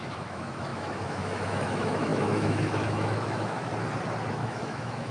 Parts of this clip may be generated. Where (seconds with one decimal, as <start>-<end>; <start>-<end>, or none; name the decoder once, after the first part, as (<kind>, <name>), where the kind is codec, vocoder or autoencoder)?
0.0-3.7 (autoencoder, DAC-VAE); 4.3-5.1